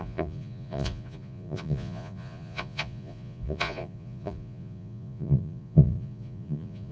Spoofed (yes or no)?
yes